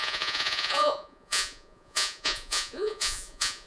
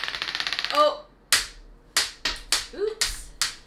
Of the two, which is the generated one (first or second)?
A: first